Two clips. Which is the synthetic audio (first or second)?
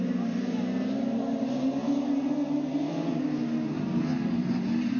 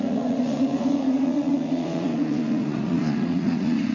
second